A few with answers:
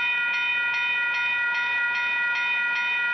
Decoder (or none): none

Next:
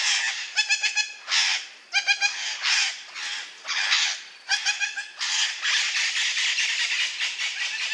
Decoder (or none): none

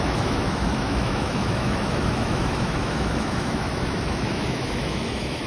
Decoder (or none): autoencoder, DAC-VAE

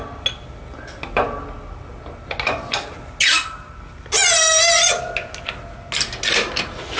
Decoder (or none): none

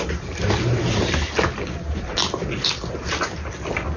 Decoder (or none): none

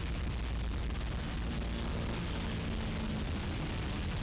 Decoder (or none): none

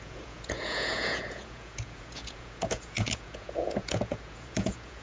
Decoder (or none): vocoder, Vocos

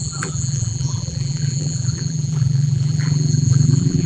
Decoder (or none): vocoder, BigVGAN v2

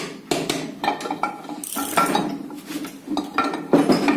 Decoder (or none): none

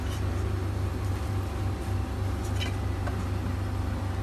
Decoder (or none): none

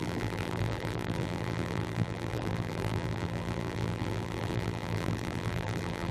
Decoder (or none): vocoder, BigVGAN v2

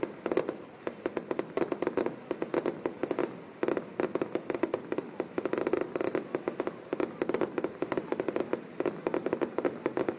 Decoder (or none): none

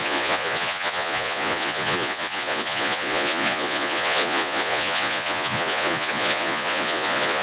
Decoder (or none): vocoder, Vocos